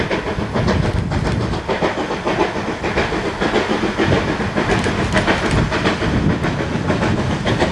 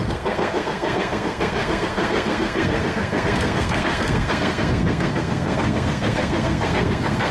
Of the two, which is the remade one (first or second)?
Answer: second